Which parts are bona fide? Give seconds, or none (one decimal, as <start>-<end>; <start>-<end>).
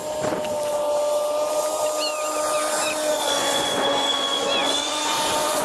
0.0-3.1